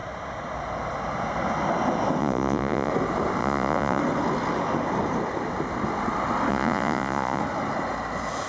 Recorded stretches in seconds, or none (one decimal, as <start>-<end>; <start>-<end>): 0.0-2.2; 2.9-3.4; 4.0-6.5; 7.4-8.5